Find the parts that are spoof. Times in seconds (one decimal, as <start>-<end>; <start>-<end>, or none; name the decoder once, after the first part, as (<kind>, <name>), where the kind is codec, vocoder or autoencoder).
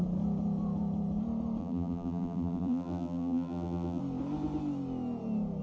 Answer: 1.6-4.0 (vocoder, BigVGAN v2)